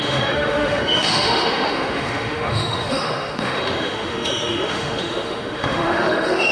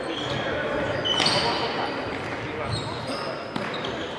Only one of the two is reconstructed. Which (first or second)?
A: first